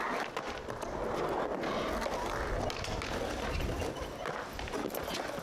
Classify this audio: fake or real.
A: real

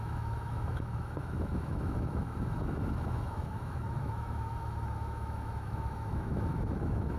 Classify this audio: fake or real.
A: fake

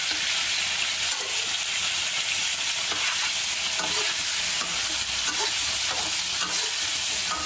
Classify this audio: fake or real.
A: real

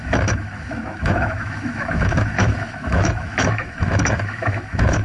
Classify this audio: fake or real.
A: fake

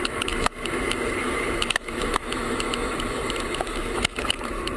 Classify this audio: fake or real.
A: fake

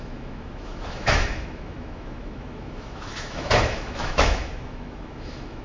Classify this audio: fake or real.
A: fake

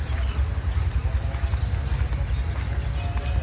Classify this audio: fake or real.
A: real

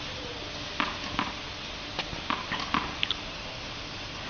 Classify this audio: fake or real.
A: real